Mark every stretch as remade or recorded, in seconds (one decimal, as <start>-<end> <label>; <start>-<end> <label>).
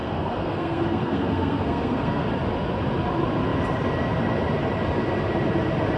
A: 0.0-2.3 remade; 2.3-6.0 recorded